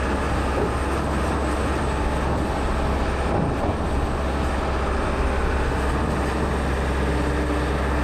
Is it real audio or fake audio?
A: real